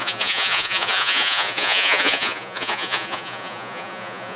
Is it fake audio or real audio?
fake